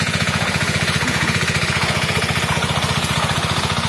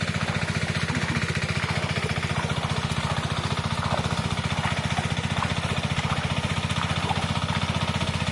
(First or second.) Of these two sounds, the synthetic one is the first